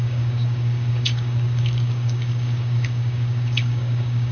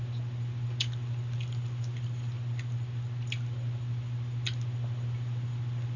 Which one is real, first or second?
second